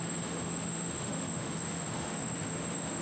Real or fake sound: fake